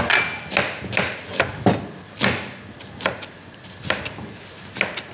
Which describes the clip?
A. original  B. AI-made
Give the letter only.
A